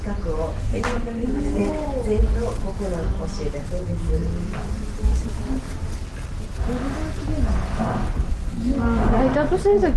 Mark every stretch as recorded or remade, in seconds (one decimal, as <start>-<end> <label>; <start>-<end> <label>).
0.0-0.5 recorded; 0.5-1.7 remade; 1.7-8.3 recorded; 8.3-9.1 remade; 9.1-10.0 recorded